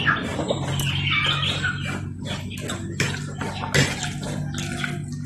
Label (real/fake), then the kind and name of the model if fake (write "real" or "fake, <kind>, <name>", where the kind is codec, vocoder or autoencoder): real